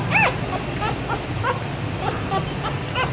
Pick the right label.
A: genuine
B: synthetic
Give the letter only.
A